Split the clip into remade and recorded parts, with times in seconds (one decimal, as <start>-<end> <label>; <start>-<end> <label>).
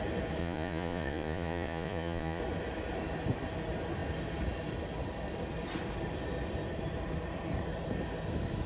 0.0-0.4 recorded; 0.4-2.4 remade; 2.4-8.7 recorded